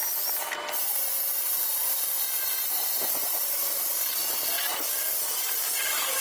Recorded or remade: recorded